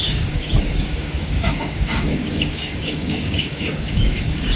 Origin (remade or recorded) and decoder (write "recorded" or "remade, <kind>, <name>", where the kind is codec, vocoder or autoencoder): remade, codec, DAC